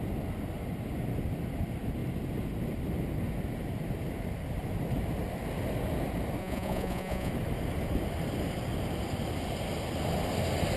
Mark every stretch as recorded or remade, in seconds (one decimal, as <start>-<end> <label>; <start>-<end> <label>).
0.0-6.4 recorded; 6.4-7.3 remade; 7.3-10.8 recorded